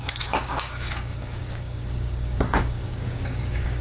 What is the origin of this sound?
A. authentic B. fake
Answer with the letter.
B